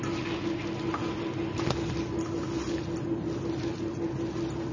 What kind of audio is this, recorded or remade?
recorded